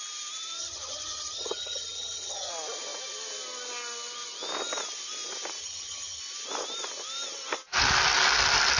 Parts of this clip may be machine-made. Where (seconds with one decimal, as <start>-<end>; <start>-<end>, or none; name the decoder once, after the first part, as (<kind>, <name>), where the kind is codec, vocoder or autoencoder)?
0.6-2.5 (vocoder, HiFi-GAN); 5.6-6.2